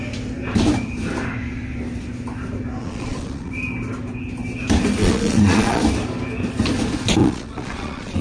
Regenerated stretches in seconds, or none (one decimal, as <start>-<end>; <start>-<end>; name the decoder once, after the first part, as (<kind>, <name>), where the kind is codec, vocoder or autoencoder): 2.8-3.5 (vocoder, Vocos); 5.0-5.8; 7.2-8.2